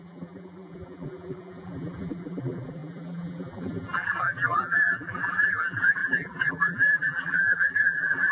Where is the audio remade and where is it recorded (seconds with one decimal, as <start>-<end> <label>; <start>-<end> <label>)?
0.0-8.3 remade